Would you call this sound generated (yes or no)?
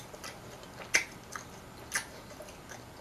no